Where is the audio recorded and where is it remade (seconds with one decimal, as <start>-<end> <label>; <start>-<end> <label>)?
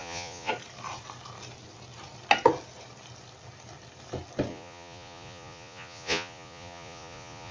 0.0-0.5 remade; 0.5-4.5 recorded; 4.5-7.5 remade